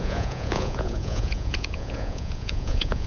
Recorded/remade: remade